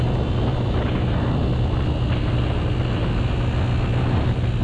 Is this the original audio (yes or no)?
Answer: yes